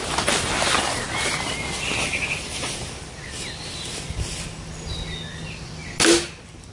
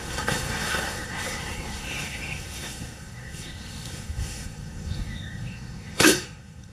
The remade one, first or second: second